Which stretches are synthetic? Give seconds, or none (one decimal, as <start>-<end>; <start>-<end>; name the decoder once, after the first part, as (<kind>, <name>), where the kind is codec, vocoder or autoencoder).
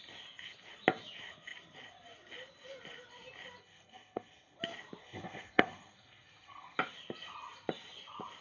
3.6-4.6 (codec, SNAC); 5.0-6.8